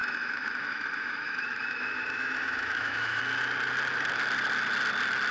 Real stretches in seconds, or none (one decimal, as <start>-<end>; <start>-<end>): 3.2-5.3